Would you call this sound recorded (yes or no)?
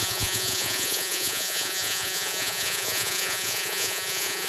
no